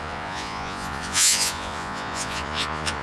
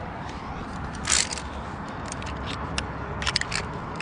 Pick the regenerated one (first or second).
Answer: first